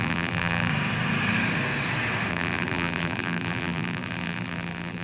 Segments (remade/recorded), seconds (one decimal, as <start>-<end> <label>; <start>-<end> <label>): 0.0-0.7 remade; 0.7-2.3 recorded; 2.3-5.0 remade